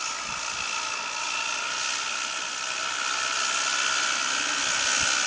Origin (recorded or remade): recorded